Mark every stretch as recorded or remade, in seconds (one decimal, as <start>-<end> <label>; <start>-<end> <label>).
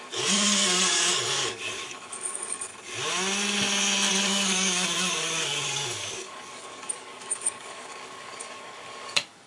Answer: 0.0-2.7 remade; 2.7-4.1 recorded; 4.1-9.5 remade